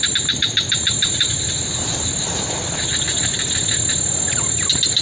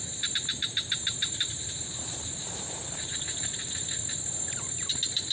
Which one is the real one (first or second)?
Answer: first